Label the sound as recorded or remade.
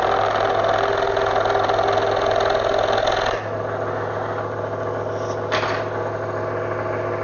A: recorded